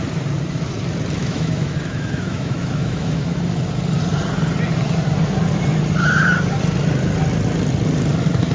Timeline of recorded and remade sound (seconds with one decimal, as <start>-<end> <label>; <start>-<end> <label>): 0.0-1.2 recorded; 1.2-3.4 remade; 3.4-8.5 recorded